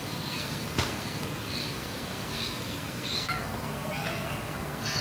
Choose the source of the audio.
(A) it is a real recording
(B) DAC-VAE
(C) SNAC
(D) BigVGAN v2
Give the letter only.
C